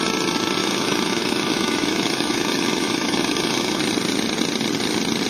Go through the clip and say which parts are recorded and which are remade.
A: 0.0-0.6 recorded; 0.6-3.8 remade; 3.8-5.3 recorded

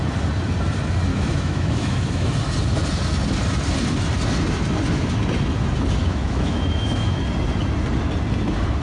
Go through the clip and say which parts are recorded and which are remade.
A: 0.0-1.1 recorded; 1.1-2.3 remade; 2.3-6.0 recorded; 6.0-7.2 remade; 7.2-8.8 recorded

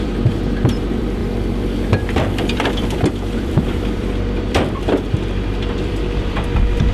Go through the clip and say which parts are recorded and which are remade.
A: 0.0-1.2 remade; 1.2-1.9 recorded; 1.9-6.9 remade

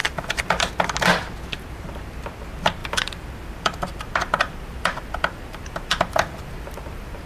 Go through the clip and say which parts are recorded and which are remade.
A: 0.0-0.7 remade; 0.7-2.8 recorded; 2.8-7.3 remade

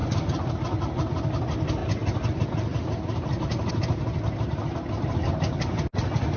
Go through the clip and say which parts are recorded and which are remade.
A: 0.0-0.5 remade; 0.5-6.4 recorded

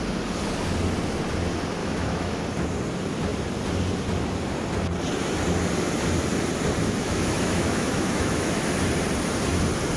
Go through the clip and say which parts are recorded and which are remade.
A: 0.0-1.8 recorded; 1.8-2.4 remade; 2.4-6.8 recorded; 6.8-8.6 remade; 8.6-10.0 recorded